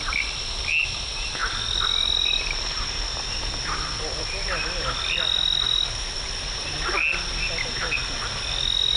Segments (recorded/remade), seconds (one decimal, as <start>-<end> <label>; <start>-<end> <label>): 0.0-9.0 recorded